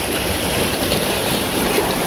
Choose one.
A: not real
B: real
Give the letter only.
A